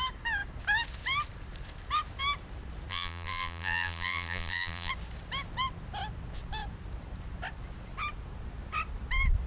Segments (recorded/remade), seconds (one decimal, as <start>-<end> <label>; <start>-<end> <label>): 0.0-2.9 recorded; 2.9-4.9 remade; 4.9-9.5 recorded